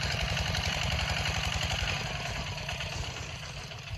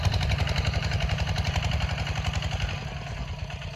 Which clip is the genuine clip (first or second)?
second